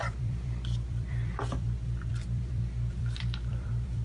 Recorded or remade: remade